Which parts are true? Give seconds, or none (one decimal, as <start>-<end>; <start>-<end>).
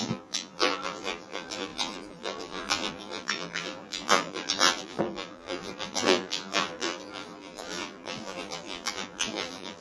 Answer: none